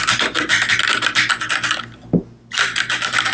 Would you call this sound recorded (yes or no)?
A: yes